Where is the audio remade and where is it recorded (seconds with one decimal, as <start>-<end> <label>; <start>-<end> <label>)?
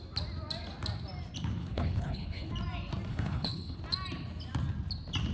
0.0-1.6 recorded; 1.6-2.5 remade; 2.5-3.1 recorded; 3.1-3.8 remade; 3.8-5.3 recorded